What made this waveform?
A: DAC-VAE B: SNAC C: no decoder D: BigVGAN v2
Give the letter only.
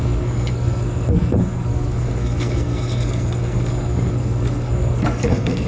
B